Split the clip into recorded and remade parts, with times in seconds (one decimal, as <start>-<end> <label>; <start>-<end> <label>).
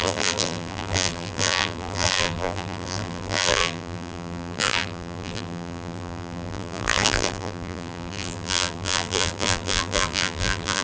0.0-10.8 remade